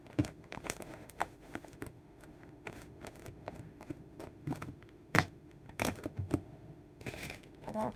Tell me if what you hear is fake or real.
fake